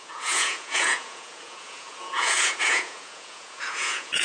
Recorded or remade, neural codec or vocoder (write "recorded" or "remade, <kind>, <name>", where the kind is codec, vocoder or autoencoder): remade, vocoder, Vocos